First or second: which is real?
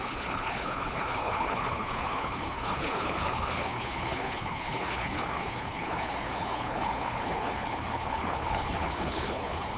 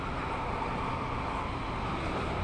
second